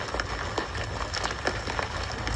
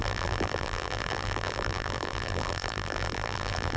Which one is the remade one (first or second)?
second